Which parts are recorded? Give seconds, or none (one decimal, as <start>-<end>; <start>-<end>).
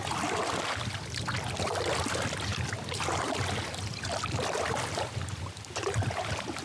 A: 0.0-6.6